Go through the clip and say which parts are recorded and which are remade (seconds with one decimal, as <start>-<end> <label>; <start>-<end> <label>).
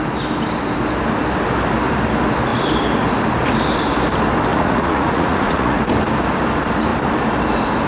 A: 0.0-4.5 recorded; 4.5-5.8 remade; 5.8-7.9 recorded